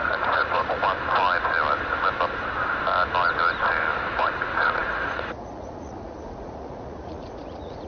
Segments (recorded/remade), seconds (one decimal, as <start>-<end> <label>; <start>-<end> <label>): 0.0-0.8 remade; 0.8-4.2 recorded; 4.2-7.9 remade